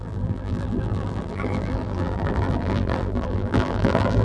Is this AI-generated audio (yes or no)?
yes